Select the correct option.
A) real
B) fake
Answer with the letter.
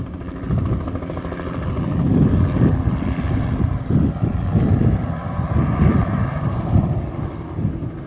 B